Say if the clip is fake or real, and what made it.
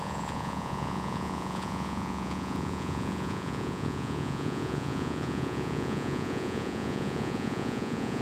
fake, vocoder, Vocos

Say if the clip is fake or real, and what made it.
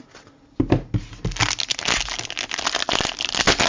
real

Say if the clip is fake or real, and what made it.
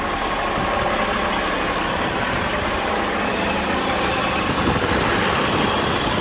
real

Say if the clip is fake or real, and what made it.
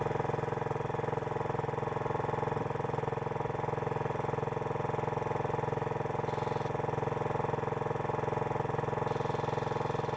real